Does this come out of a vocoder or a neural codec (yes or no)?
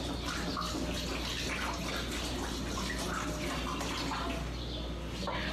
no